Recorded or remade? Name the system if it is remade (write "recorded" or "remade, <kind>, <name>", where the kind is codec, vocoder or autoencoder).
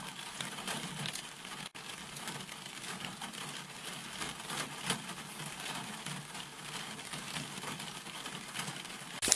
recorded